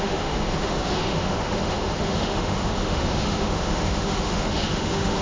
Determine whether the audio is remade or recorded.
remade